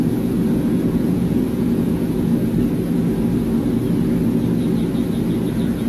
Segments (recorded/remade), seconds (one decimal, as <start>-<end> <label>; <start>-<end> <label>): 0.0-2.3 remade; 2.3-5.5 recorded; 5.5-5.9 remade